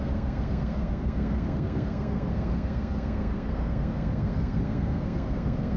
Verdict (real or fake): fake